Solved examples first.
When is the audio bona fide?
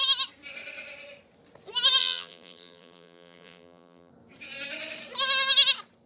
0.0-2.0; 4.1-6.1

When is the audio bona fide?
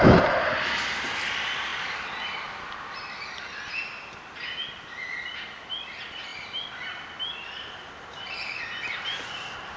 1.7-5.0